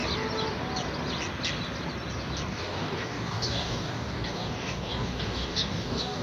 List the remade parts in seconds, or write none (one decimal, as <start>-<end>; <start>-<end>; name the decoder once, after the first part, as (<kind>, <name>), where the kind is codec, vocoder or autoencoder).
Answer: 2.5-6.2 (codec, DAC)